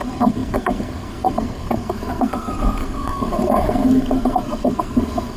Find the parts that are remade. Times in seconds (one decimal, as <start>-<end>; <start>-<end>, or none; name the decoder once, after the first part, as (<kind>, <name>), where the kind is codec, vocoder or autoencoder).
0.0-5.4 (codec, SNAC)